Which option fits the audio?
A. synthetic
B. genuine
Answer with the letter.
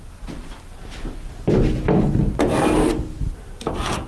B